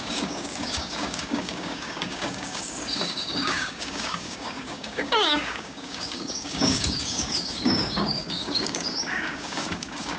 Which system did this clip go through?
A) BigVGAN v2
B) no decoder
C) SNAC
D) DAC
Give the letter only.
D